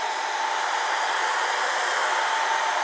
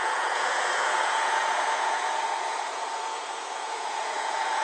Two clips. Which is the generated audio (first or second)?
second